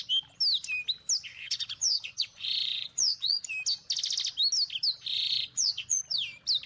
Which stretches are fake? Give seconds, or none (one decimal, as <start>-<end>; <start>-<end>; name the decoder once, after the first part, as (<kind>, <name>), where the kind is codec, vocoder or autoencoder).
1.3-3.4 (vocoder, Vocos); 5.1-6.0